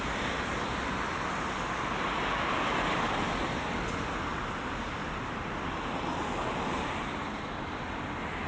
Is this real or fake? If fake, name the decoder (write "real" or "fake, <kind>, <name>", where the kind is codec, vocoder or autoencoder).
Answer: real